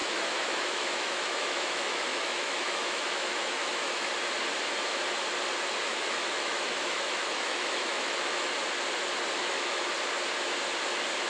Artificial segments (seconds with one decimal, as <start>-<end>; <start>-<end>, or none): 0.0-4.1; 5.9-8.5; 9.4-9.9